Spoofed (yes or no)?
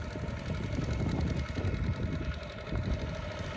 yes